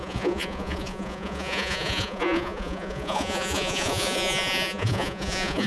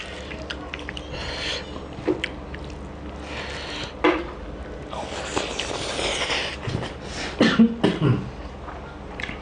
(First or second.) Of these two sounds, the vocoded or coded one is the first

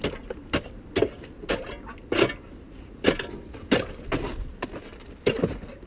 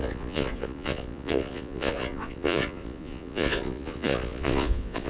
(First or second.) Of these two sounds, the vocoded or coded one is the second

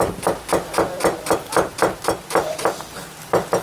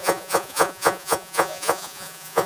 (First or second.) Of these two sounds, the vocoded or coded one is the second